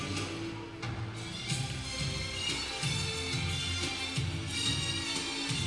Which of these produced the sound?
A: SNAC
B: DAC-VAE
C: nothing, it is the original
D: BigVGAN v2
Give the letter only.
C